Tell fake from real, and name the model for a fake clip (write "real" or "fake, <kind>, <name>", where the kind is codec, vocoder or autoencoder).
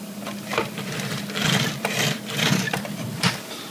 fake, vocoder, BigVGAN v2